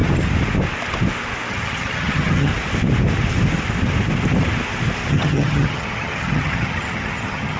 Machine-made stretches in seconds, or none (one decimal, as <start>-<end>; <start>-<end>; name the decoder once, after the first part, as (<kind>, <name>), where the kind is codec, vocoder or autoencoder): 1.5-2.5 (vocoder, HiFi-GAN); 5.1-7.6